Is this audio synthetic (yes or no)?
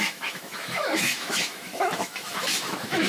yes